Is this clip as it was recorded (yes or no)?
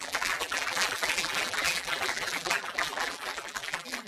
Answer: no